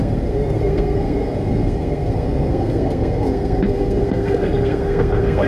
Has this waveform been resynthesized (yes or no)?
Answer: yes